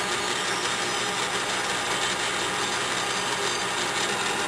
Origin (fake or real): real